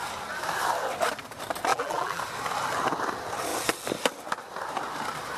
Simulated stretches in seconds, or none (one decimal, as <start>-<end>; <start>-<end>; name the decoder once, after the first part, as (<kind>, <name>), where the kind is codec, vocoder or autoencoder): 1.7-2.2 (vocoder, BigVGAN v2)